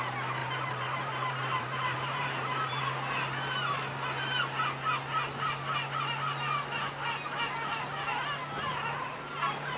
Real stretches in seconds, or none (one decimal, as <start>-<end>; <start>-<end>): 0.0-0.4; 2.8-9.8